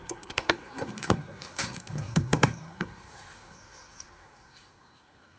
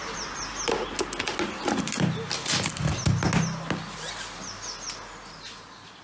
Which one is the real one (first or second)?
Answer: second